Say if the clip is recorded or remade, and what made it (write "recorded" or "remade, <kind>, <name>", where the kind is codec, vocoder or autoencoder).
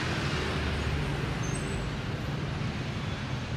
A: recorded